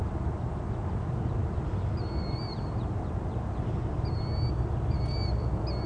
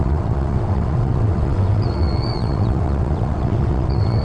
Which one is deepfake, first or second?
second